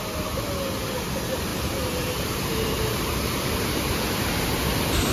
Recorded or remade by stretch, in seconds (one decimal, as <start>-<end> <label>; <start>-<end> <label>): 0.0-1.5 recorded; 1.5-4.6 remade; 4.6-5.1 recorded